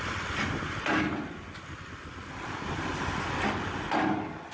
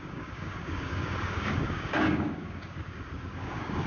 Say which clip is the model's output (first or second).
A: second